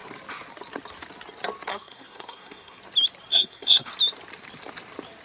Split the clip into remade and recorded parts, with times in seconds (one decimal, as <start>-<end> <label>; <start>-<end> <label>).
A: 0.0-1.7 recorded; 1.7-2.8 remade; 2.8-3.3 recorded; 3.3-3.9 remade; 3.9-5.2 recorded